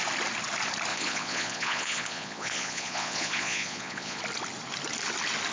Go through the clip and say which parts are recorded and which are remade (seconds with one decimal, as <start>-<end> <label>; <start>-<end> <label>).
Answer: 0.0-0.9 recorded; 0.9-4.2 remade; 4.2-5.5 recorded